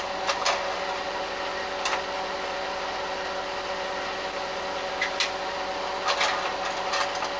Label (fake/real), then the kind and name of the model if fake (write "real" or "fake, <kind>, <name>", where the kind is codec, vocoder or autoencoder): real